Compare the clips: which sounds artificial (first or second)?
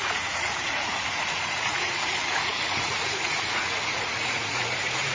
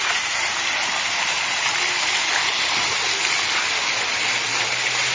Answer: first